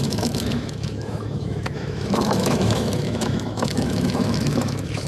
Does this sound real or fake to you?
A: fake